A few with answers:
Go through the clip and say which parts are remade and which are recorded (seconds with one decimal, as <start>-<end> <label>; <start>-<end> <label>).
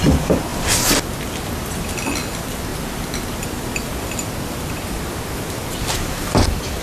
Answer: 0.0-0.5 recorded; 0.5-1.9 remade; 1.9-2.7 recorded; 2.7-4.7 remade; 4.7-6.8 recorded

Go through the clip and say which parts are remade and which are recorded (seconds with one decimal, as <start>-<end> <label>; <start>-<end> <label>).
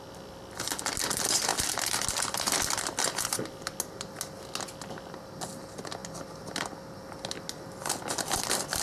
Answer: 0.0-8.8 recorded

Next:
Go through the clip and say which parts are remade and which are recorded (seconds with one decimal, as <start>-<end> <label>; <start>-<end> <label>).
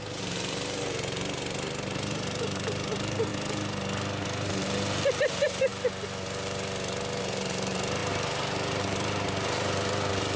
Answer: 0.0-3.3 remade; 3.3-5.2 recorded; 5.2-5.7 remade; 5.7-7.2 recorded; 7.2-10.4 remade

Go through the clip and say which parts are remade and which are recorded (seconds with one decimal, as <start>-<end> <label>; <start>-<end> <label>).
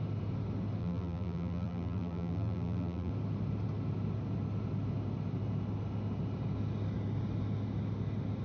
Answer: 0.0-0.8 recorded; 0.8-3.1 remade; 3.1-8.4 recorded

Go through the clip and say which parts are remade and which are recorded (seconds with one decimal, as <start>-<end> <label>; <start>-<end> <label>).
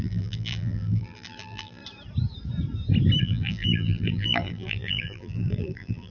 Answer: 0.0-1.8 remade; 1.8-3.2 recorded; 3.2-6.1 remade